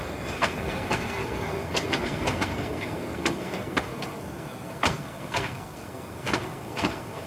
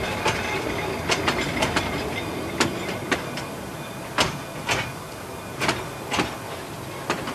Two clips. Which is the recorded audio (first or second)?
second